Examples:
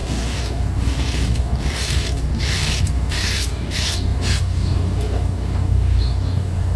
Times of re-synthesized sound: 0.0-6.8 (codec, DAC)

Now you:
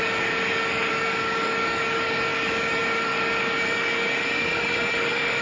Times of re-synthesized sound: 0.0-5.4 (codec, DAC)

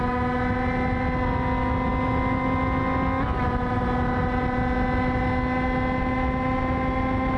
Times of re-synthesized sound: none

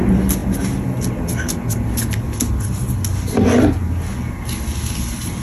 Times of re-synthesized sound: none